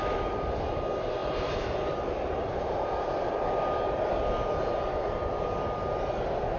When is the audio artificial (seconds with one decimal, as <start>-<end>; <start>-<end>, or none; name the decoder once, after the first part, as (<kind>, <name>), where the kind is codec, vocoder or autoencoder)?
1.2-3.1 (vocoder, BigVGAN v2)